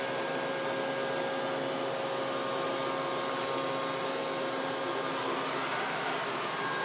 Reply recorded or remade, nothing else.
recorded